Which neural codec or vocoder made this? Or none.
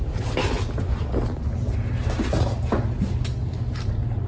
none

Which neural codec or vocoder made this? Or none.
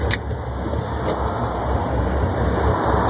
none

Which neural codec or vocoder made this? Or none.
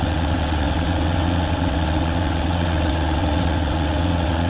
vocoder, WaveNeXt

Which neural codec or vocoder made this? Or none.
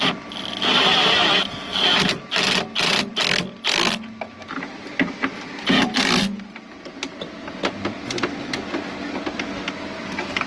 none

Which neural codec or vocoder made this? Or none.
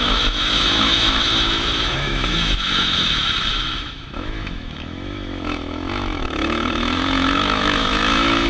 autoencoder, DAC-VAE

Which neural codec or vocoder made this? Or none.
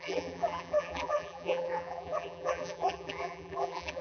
vocoder, BigVGAN v2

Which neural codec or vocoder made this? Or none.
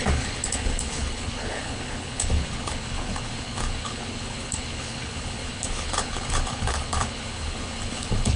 codec, HILCodec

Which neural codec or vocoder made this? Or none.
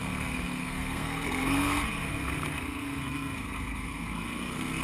codec, SNAC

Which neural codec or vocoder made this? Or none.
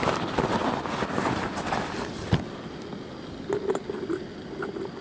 none